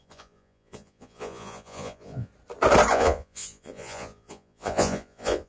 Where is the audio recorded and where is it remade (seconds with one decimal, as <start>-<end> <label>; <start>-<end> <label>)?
0.0-2.3 remade; 2.3-2.9 recorded; 2.9-5.5 remade